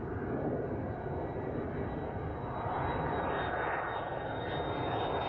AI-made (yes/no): no